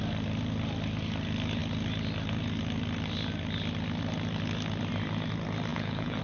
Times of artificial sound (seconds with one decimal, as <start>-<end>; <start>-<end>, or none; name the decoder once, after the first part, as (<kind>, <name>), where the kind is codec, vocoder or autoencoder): 5.7-6.2 (vocoder, Vocos)